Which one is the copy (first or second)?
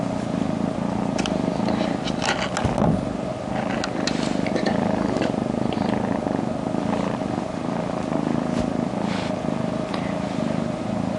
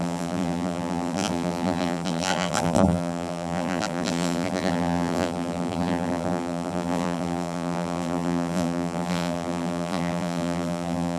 second